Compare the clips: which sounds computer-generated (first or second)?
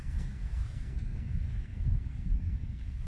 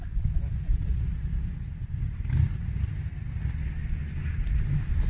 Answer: first